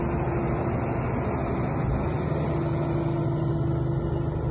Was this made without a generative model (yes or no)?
yes